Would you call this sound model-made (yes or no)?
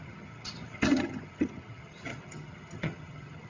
yes